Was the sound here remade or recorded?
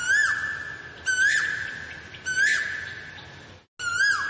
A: recorded